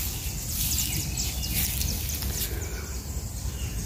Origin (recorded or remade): recorded